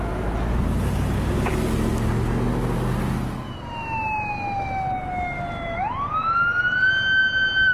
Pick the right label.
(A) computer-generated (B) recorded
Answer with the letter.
B